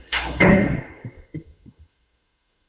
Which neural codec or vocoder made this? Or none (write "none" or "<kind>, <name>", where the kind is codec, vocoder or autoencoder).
codec, SNAC